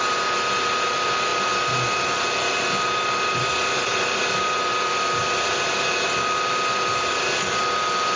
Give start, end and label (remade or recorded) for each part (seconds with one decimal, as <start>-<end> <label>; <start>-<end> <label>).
0.0-8.2 recorded